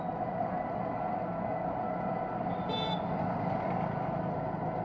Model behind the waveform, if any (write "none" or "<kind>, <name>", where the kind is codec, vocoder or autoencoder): none